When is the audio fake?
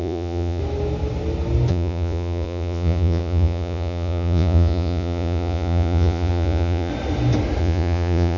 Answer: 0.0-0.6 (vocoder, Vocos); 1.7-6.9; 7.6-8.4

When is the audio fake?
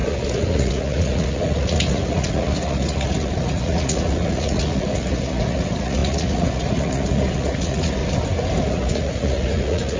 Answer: 0.0-8.0 (vocoder, Vocos); 8.6-10.0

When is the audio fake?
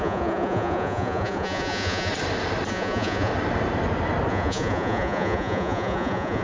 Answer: 0.0-2.1 (vocoder, Vocos); 2.7-3.3; 4.3-6.4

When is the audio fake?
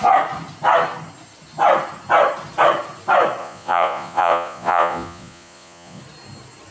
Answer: 3.4-6.0 (vocoder, Vocos)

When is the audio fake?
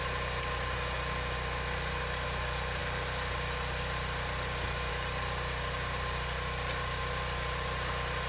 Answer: none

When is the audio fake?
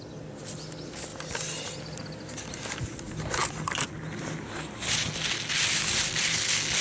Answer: none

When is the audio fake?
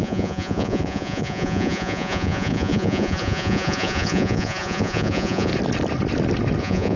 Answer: 0.0-5.5 (vocoder, Vocos); 6.6-7.0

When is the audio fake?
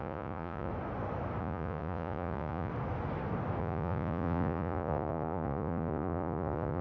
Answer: 0.0-0.7 (vocoder, Vocos); 1.4-2.7; 3.6-6.8